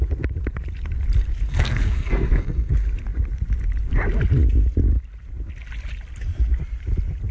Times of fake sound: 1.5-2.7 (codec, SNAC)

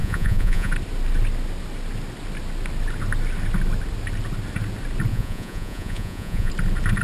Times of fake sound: 0.0-0.7 (vocoder, Vocos); 5.1-6.5

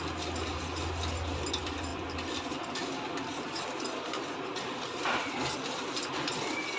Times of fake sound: none

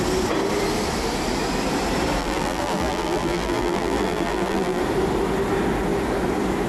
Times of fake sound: 2.2-4.8 (vocoder, BigVGAN v2)

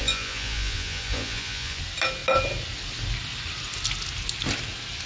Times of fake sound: 0.0-1.8 (vocoder, Vocos)